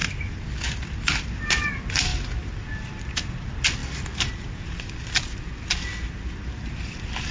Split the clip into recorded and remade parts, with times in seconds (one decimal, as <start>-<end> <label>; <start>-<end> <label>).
0.0-7.3 recorded